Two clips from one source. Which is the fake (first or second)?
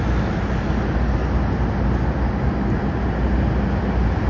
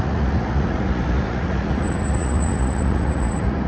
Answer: second